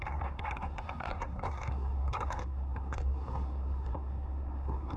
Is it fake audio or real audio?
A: fake